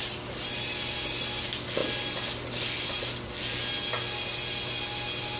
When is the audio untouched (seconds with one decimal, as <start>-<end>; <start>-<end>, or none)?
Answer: 0.0-5.4